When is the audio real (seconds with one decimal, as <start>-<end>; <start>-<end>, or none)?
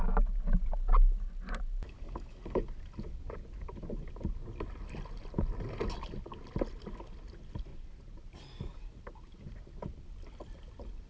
0.0-7.7; 8.4-11.1